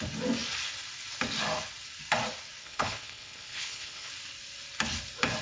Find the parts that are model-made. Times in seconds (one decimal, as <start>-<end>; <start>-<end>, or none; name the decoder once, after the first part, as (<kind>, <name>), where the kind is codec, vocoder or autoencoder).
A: 2.6-4.1 (codec, HILCodec)